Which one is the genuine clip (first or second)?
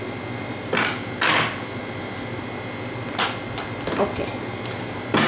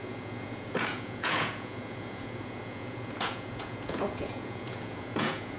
first